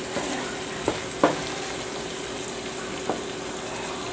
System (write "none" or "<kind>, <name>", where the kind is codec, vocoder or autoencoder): none